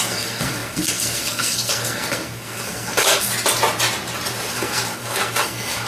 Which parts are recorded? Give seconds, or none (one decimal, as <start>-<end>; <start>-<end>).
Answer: 3.3-4.5

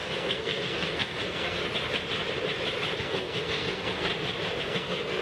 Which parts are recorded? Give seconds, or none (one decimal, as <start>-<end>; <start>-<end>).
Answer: 1.6-3.0; 4.1-4.6

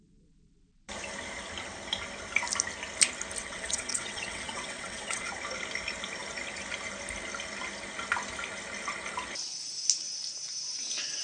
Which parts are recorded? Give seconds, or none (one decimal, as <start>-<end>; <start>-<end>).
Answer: 0.0-3.4; 5.3-11.2

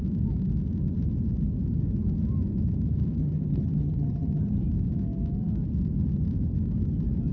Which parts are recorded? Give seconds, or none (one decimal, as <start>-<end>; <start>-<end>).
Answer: 0.0-3.2; 4.6-7.3